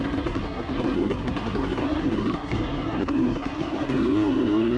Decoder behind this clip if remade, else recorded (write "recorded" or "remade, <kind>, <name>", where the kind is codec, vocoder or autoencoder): remade, codec, SNAC